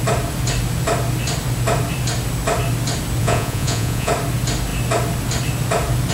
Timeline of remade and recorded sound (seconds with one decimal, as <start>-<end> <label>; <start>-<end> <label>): 0.0-3.2 recorded; 3.2-4.1 remade; 4.1-6.1 recorded